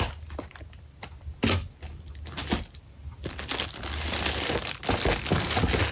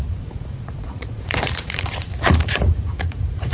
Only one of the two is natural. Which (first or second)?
first